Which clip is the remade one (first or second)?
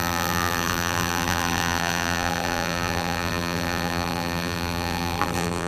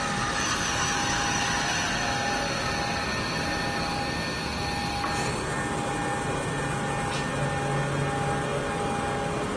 first